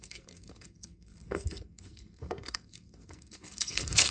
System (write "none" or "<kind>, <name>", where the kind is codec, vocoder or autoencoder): codec, SNAC